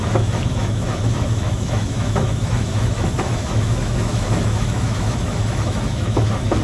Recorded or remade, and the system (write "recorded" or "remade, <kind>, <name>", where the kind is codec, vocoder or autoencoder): remade, autoencoder, DAC-VAE